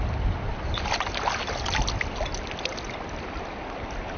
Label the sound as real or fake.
real